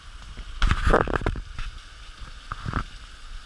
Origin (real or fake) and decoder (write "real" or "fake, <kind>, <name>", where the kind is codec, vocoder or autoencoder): real